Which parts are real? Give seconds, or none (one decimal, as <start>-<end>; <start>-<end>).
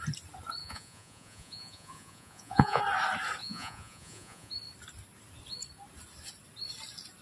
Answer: 0.0-0.6; 2.8-3.4; 4.5-7.2